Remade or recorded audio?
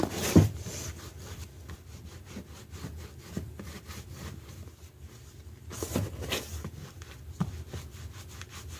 recorded